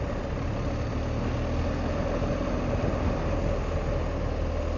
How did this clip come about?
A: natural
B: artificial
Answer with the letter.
A